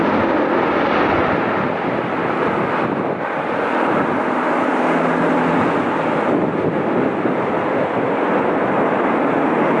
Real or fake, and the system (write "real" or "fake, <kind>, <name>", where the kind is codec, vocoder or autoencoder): real